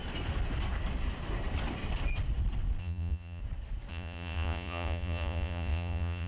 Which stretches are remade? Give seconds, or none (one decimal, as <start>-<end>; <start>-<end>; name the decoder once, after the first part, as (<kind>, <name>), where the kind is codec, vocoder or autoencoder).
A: 2.8-3.4 (vocoder, Vocos); 3.9-6.3